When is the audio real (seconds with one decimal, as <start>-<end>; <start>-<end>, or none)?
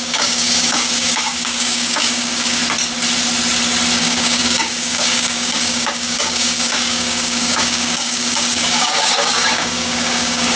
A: 2.6-4.0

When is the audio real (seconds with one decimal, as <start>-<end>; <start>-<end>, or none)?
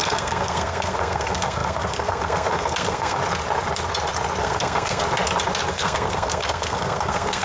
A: 3.2-4.4; 5.0-5.7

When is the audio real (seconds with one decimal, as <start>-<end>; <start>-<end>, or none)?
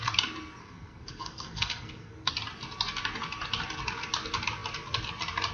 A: 0.0-0.6; 2.3-5.5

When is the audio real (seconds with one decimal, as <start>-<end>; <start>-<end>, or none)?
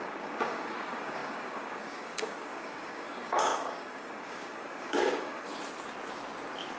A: 5.5-6.8